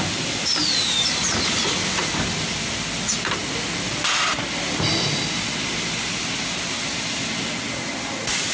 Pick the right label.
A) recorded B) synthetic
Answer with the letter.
A